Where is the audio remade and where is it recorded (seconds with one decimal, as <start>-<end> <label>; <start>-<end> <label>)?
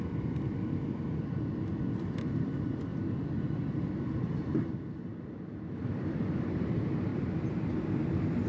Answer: 0.0-8.5 remade